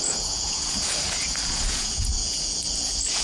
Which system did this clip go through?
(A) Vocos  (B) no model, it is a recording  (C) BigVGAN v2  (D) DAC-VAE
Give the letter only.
A